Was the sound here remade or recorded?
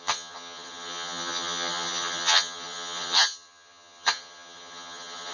remade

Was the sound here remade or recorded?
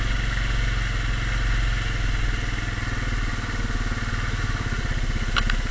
recorded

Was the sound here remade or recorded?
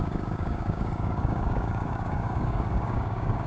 remade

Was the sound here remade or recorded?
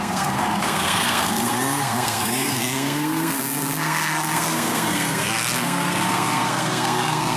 remade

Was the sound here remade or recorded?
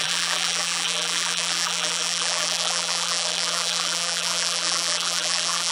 remade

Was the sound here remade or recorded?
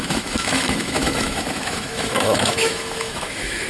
remade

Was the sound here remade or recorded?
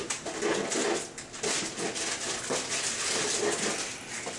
recorded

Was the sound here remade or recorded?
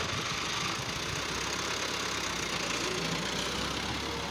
recorded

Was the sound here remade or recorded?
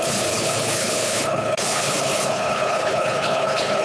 remade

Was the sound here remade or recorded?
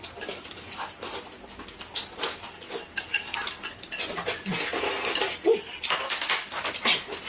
recorded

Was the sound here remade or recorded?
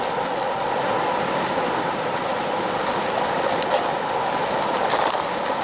recorded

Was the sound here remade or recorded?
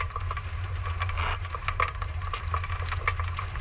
recorded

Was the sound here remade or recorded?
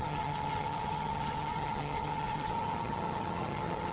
remade